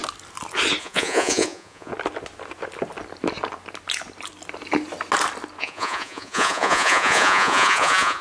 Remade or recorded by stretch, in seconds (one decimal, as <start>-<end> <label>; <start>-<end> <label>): 0.0-0.8 recorded; 0.8-1.9 remade; 1.9-5.6 recorded; 5.6-8.2 remade